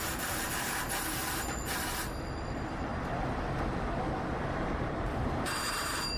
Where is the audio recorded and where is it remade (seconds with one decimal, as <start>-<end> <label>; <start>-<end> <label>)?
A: 0.0-2.9 remade; 2.9-4.4 recorded; 4.4-6.2 remade